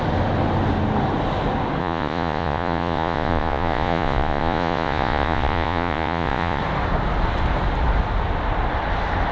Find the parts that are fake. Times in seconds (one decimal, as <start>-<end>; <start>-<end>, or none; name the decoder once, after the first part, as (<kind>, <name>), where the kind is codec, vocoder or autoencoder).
1.8-6.6 (vocoder, Vocos)

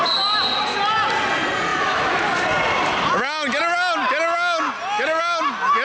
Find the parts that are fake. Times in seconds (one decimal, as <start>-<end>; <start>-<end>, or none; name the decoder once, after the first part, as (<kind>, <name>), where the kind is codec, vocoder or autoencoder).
none

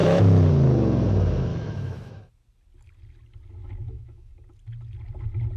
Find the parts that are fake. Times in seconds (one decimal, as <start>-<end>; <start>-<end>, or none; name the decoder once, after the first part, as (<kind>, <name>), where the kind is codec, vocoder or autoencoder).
0.0-0.5 (autoencoder, DAC-VAE); 1.5-2.2; 3.6-4.3

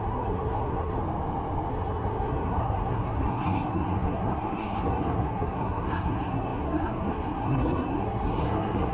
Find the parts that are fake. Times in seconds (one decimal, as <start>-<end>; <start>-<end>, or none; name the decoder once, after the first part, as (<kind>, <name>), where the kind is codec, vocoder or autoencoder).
0.0-1.0 (codec, SNAC); 1.7-8.9

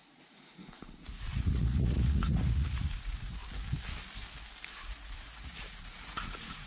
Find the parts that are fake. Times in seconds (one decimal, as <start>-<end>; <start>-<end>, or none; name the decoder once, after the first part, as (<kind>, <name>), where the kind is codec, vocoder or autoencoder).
0.0-3.4 (vocoder, Vocos); 4.8-6.7

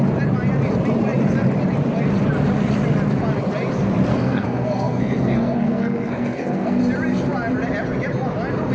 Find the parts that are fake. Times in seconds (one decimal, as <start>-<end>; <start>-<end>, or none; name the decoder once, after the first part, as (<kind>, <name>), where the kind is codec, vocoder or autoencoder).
4.1-6.8 (codec, SNAC)

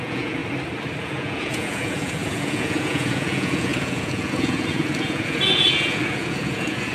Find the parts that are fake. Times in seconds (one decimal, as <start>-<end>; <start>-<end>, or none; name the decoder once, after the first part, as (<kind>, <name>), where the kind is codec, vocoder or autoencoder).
0.0-0.4 (vocoder, Vocos); 1.0-6.9

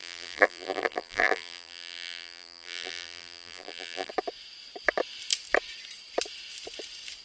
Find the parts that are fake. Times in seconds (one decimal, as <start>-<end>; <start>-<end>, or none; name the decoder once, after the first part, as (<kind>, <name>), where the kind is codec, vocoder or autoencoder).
0.0-4.1 (vocoder, BigVGAN v2)